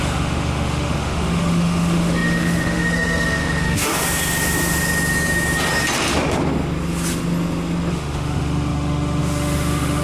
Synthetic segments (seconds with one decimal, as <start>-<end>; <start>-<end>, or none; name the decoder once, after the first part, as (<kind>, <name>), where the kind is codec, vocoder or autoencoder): 0.0-3.9 (autoencoder, DAC-VAE); 7.9-10.0